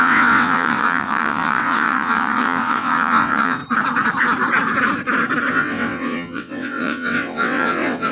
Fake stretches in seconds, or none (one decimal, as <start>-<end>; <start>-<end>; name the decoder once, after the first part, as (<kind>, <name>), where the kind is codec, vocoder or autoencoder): 0.0-3.6 (vocoder, WaveNeXt); 5.5-8.1